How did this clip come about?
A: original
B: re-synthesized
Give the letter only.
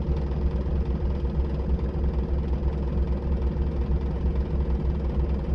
A